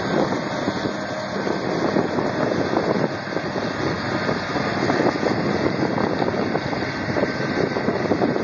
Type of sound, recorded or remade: recorded